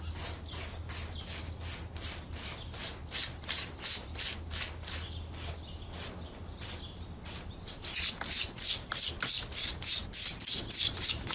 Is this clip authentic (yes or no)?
yes